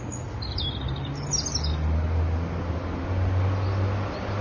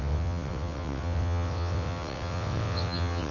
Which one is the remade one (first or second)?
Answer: second